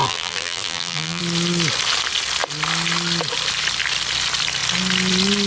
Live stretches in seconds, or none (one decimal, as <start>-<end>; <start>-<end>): 1.2-5.5